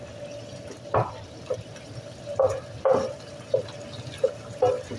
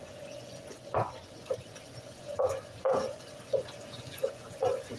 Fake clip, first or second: second